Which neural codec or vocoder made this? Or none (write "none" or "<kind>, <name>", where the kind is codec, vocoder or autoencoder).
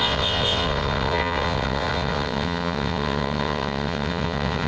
vocoder, WaveNeXt